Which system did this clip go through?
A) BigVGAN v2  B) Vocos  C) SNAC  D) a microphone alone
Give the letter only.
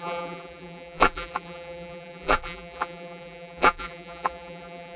A